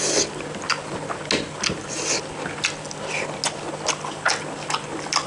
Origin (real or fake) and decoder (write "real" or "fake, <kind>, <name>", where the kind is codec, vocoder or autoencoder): real